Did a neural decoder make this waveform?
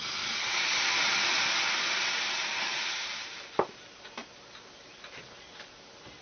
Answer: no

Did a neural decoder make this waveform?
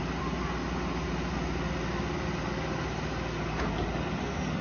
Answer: no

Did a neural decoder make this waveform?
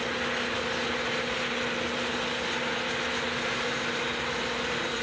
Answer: no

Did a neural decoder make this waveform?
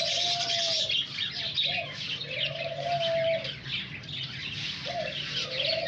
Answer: no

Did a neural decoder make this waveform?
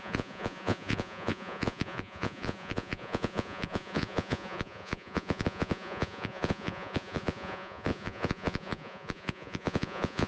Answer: yes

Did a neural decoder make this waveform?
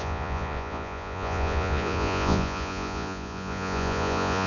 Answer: yes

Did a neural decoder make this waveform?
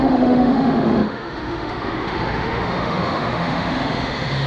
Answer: yes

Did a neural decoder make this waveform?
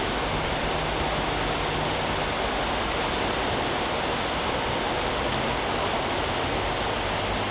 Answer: no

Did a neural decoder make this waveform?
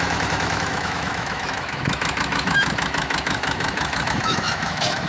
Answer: yes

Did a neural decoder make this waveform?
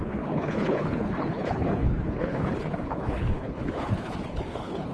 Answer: yes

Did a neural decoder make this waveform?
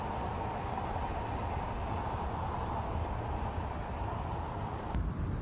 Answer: no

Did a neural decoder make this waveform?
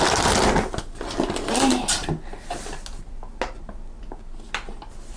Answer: no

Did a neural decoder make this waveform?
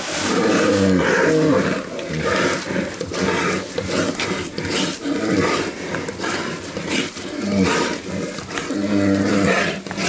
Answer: no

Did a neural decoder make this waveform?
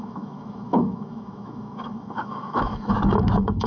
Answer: yes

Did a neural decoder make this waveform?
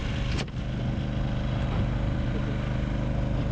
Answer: no